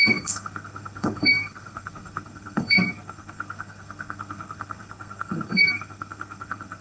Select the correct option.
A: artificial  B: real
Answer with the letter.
A